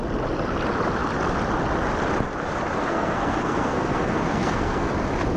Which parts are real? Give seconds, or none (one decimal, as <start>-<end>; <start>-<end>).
0.0-2.8; 4.9-5.4